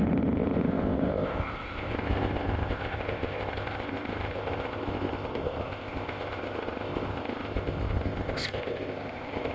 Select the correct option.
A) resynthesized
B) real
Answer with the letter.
A